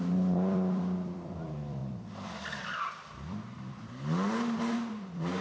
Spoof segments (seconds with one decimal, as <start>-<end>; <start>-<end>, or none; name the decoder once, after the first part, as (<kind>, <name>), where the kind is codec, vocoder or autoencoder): 0.0-5.4 (vocoder, BigVGAN v2)